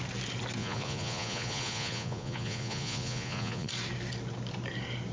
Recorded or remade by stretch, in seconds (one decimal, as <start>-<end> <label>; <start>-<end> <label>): 0.0-0.6 recorded; 0.6-3.7 remade; 3.7-5.1 recorded

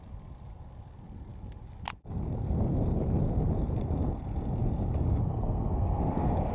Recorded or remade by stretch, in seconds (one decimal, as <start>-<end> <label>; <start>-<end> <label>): 0.0-5.2 recorded; 5.2-6.0 remade; 6.0-6.5 recorded

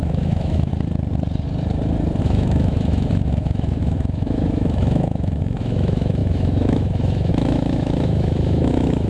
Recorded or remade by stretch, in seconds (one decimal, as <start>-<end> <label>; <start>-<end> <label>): 0.0-0.7 remade; 0.7-2.2 recorded; 2.2-9.1 remade

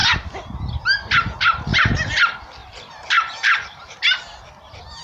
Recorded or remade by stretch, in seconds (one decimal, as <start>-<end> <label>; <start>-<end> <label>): 0.0-1.7 recorded; 1.7-2.2 remade; 2.2-2.6 recorded; 2.6-4.2 remade; 4.2-5.0 recorded